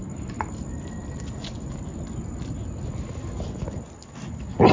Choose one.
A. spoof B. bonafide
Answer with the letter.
B